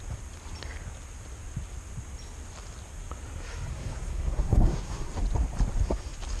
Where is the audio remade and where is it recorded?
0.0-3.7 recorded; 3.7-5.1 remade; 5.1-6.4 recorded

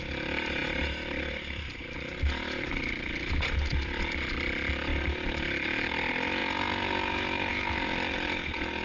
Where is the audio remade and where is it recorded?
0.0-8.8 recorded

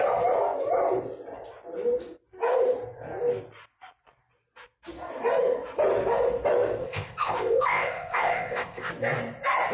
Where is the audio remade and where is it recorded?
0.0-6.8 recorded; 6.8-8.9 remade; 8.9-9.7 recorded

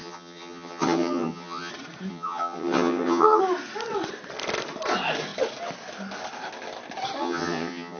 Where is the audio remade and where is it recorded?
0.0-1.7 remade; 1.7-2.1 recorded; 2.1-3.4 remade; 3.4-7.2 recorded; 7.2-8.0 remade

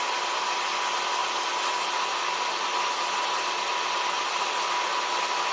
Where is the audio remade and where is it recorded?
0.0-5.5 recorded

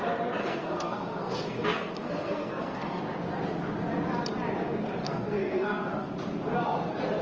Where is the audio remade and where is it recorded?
0.0-0.4 recorded; 0.4-3.0 remade; 3.0-5.0 recorded; 5.0-6.1 remade; 6.1-7.2 recorded

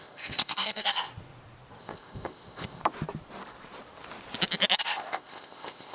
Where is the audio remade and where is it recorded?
0.0-1.1 remade; 1.1-1.8 recorded; 1.8-2.8 remade; 2.8-4.8 recorded; 4.8-5.9 remade

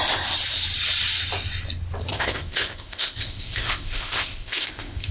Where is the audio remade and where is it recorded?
0.0-2.1 recorded; 2.1-5.1 remade